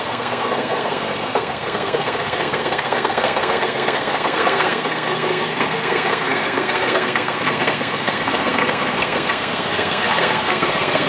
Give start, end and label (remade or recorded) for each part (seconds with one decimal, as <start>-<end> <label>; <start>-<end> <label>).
0.0-11.1 remade